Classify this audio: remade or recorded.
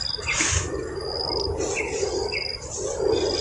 recorded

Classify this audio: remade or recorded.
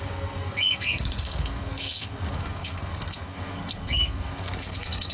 remade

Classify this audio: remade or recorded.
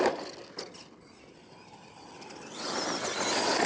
recorded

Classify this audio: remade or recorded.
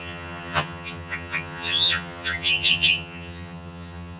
remade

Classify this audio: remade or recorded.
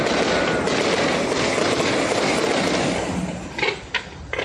recorded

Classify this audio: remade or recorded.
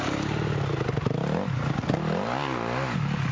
recorded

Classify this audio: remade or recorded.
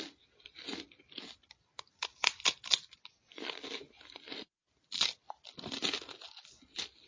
recorded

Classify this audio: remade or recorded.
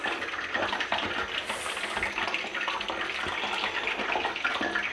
recorded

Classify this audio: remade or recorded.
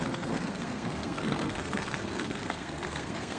remade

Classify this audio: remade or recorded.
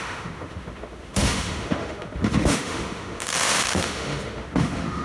remade